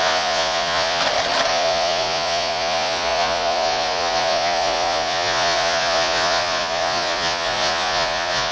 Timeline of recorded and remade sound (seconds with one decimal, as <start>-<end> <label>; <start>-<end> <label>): 0.0-1.0 remade; 1.0-1.5 recorded; 1.5-8.5 remade